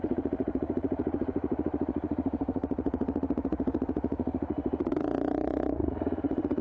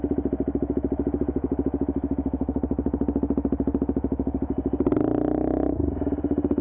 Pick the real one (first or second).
second